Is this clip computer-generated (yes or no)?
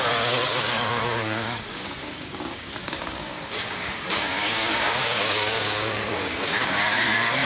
yes